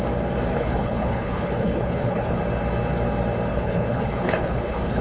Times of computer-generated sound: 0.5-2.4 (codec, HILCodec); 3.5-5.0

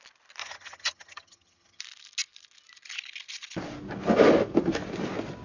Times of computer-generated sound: 0.4-1.8 (vocoder, HiFi-GAN)

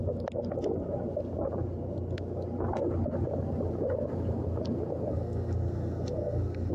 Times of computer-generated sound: 5.1-6.7 (codec, SNAC)

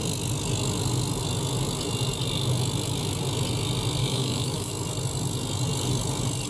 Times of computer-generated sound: 4.0-4.7 (autoencoder, DAC-VAE)